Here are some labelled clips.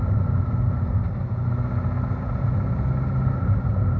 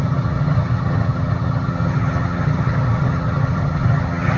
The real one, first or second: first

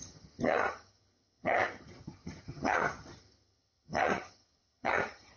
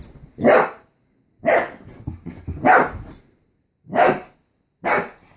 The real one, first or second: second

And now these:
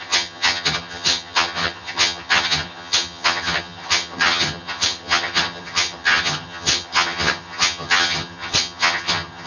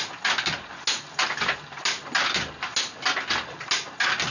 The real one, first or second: second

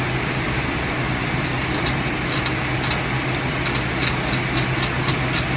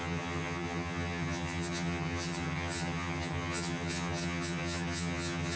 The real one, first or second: first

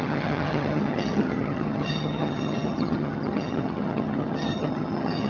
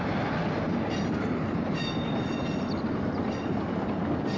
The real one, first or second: second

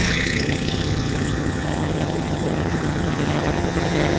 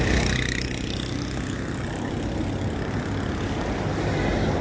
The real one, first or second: second